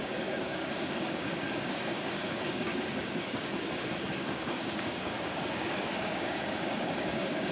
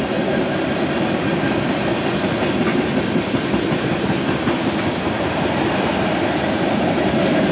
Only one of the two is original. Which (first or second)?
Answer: second